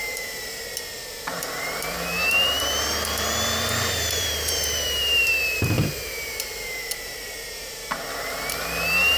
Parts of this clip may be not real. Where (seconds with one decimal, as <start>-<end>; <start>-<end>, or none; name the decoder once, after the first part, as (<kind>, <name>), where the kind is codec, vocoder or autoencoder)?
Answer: 0.0-0.6 (vocoder, BigVGAN v2); 1.3-9.2